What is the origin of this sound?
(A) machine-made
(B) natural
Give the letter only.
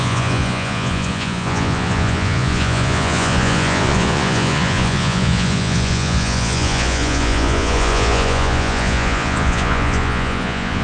A